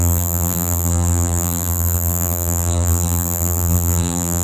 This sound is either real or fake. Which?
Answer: fake